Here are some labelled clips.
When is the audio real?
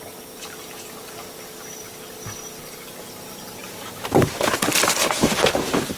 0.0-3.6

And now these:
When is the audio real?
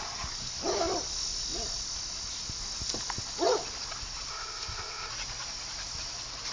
0.0-4.3; 5.1-6.5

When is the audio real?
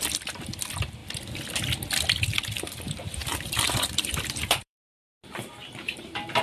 0.0-3.2; 5.0-6.4